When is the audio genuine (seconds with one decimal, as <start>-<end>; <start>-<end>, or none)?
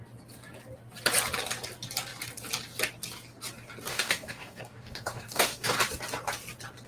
0.0-3.9; 5.8-6.9